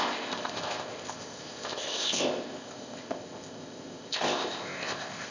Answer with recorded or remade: remade